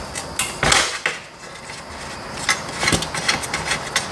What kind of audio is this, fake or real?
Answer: real